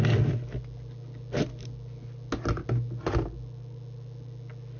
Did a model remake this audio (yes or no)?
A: no